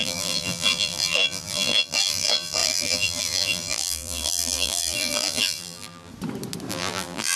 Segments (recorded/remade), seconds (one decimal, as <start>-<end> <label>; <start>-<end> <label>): 0.0-6.1 remade; 6.1-6.7 recorded; 6.7-7.4 remade